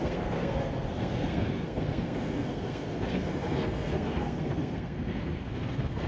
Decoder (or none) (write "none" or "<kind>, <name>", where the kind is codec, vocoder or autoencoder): codec, SNAC